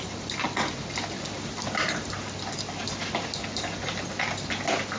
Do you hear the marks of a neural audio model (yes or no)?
no